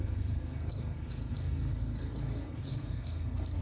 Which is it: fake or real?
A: fake